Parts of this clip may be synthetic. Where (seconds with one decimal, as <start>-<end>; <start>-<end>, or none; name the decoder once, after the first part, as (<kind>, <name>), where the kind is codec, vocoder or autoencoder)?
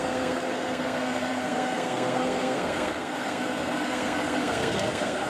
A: 0.0-5.3 (codec, SNAC)